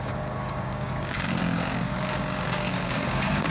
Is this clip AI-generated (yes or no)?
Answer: yes